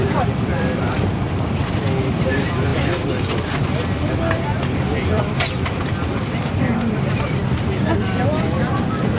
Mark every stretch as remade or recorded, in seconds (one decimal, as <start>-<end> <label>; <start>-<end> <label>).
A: 0.0-1.7 remade; 1.7-4.9 recorded; 4.9-7.4 remade; 7.4-9.2 recorded